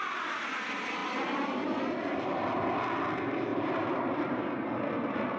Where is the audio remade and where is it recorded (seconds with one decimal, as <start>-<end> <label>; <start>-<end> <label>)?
0.0-3.5 recorded; 3.5-4.4 remade; 4.4-5.4 recorded

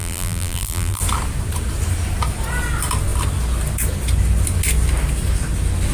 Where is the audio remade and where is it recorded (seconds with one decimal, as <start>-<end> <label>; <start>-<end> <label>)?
0.0-1.0 remade; 1.0-5.9 recorded

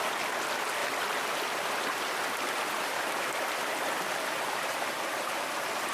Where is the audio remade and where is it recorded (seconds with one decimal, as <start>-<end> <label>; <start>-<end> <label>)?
0.0-0.8 recorded; 0.8-3.4 remade; 3.4-5.9 recorded

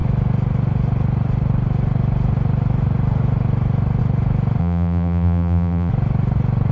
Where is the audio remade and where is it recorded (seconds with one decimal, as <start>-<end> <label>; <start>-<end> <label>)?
0.0-4.6 recorded; 4.6-5.9 remade; 5.9-6.7 recorded

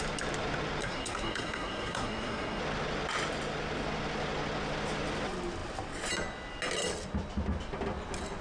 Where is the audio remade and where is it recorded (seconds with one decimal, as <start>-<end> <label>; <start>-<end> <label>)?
0.0-0.8 recorded; 0.8-2.6 remade; 2.6-8.4 recorded